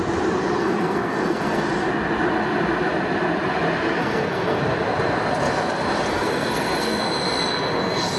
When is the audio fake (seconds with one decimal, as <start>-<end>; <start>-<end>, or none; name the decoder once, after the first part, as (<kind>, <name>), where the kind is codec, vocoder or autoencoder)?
0.6-1.6 (codec, SNAC); 4.0-4.6; 6.1-7.0